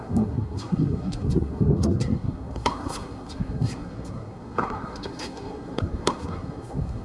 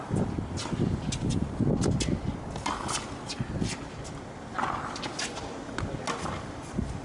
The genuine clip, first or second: second